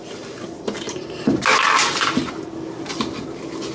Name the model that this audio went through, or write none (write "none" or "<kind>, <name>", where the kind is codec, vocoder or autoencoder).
none